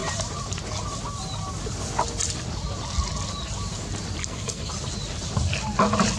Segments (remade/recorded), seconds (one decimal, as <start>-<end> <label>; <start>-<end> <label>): 0.0-4.2 recorded; 4.2-4.7 remade; 4.7-6.2 recorded

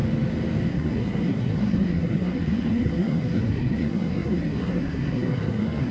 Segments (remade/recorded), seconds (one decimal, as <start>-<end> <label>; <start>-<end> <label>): 0.0-0.7 recorded; 0.7-5.9 remade

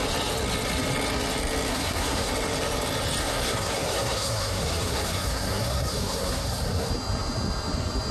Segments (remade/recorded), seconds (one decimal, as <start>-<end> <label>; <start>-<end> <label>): 0.0-1.7 recorded; 1.7-2.3 remade; 2.3-3.2 recorded; 3.2-6.9 remade; 6.9-8.1 recorded

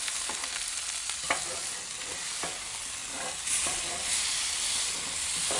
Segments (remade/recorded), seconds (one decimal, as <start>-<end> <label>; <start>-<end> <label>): 0.0-5.6 recorded

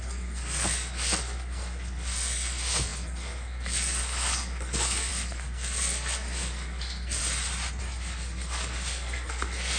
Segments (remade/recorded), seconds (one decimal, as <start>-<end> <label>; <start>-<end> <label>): 0.0-7.2 remade; 7.2-7.8 recorded; 7.8-9.8 remade

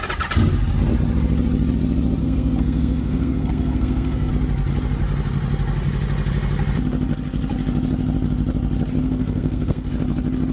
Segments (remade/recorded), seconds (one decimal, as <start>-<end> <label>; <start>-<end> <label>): 0.0-2.2 recorded; 2.2-4.3 remade; 4.3-9.0 recorded; 9.0-9.9 remade; 9.9-10.5 recorded

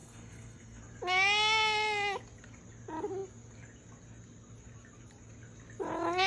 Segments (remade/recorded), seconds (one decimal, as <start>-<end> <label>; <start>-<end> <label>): 0.0-0.8 remade; 0.8-6.3 recorded